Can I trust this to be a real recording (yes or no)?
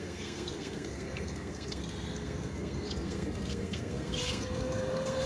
no